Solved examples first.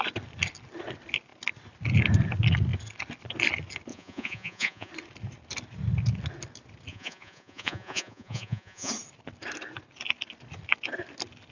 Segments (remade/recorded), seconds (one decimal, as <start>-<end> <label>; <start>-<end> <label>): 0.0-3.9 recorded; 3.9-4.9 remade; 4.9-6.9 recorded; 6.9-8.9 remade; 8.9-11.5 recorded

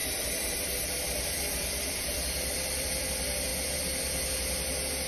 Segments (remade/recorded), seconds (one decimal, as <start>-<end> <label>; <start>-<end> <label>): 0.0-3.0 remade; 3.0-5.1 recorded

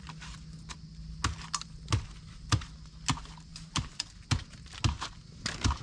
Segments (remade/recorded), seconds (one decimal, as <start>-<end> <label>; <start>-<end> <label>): 0.0-5.8 recorded

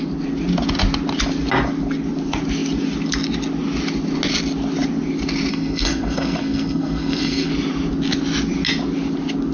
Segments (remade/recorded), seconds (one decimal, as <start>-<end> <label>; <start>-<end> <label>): 0.0-5.5 recorded; 5.5-7.5 remade; 7.5-9.5 recorded

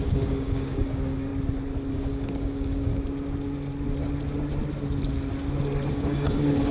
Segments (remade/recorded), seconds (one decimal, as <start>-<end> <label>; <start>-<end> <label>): 0.0-1.3 remade; 1.3-1.9 recorded; 1.9-2.9 remade; 2.9-5.9 recorded; 5.9-6.7 remade

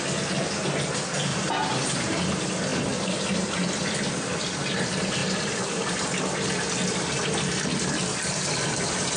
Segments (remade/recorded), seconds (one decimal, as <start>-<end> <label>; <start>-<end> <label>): 0.0-1.3 recorded; 1.3-2.2 remade; 2.2-5.2 recorded; 5.2-6.2 remade; 6.2-8.1 recorded; 8.1-9.2 remade

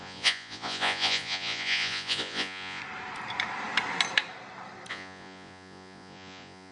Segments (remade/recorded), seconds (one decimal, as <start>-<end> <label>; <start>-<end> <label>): 0.0-2.8 remade; 2.8-4.9 recorded; 4.9-6.7 remade